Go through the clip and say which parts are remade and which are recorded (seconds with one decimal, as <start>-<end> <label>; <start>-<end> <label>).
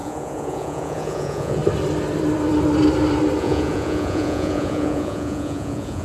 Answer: 0.0-1.6 remade; 1.6-3.4 recorded; 3.4-6.0 remade